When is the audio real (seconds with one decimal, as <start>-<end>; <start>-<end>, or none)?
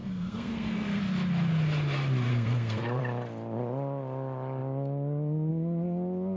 1.0-2.3; 3.0-6.4